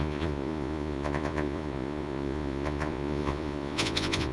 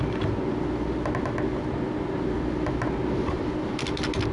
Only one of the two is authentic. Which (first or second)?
second